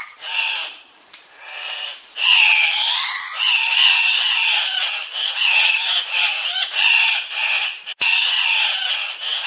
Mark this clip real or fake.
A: fake